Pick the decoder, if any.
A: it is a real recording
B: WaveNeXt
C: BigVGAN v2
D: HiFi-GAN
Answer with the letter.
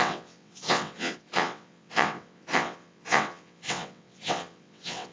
B